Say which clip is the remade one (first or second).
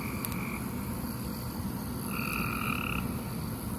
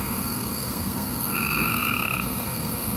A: second